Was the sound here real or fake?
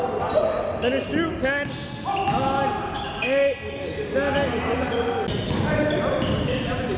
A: real